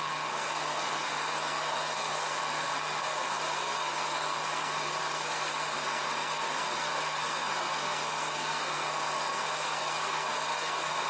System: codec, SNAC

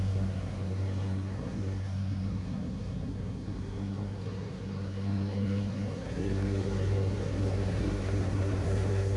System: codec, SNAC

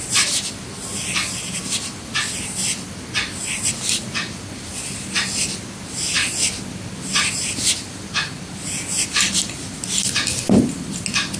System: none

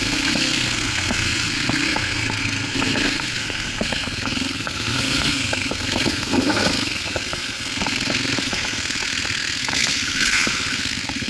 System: codec, SNAC